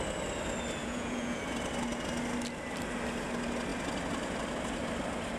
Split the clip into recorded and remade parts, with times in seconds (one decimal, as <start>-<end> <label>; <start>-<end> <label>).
0.0-0.8 recorded; 0.8-1.4 remade; 1.4-5.4 recorded